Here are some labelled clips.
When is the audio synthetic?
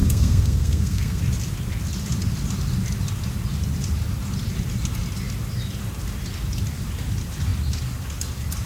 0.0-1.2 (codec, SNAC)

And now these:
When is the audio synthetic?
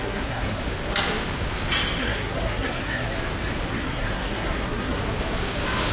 0.0-0.6 (codec, SNAC); 2.0-3.1; 3.7-5.0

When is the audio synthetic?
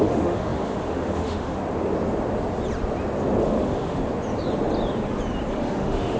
0.0-1.6 (autoencoder, DAC-VAE); 3.4-4.0; 5.5-6.2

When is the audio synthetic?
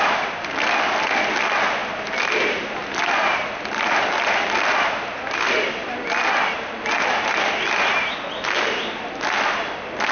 none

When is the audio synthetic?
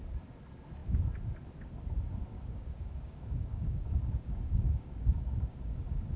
2.3-6.2 (codec, DAC)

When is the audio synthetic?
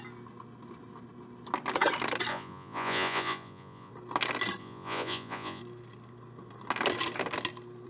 2.3-3.9 (vocoder, Vocos); 4.6-5.6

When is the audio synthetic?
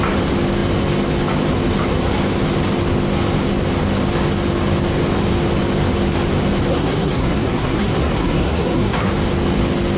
6.7-9.1 (codec, SNAC)